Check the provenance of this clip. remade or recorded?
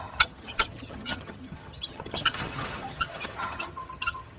remade